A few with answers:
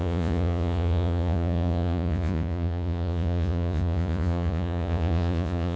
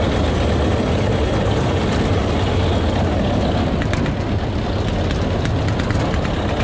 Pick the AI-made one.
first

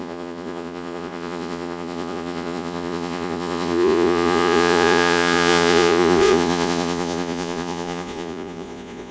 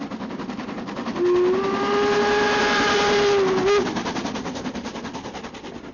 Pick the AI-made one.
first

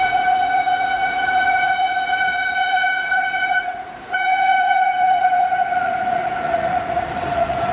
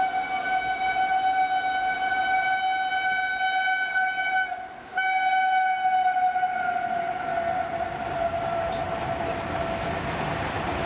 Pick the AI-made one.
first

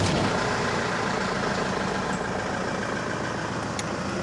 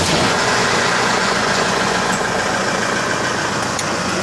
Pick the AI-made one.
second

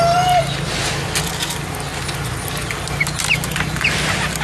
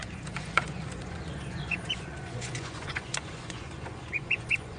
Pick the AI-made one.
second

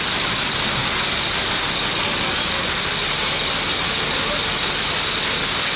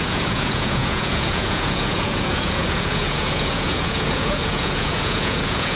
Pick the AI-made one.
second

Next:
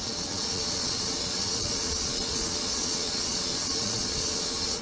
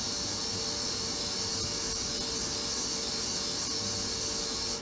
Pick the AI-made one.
first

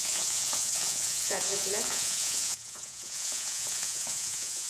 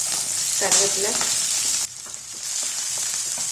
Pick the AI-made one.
first